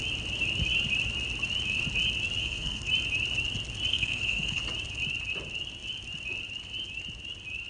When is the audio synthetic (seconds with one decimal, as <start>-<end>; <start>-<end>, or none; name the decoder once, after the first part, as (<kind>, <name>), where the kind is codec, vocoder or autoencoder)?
2.4-2.9 (codec, SNAC); 3.9-4.6